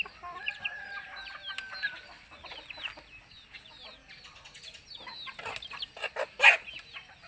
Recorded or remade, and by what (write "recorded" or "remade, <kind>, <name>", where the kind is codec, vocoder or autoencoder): recorded